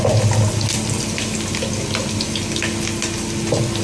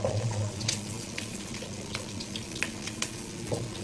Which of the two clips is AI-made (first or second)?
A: second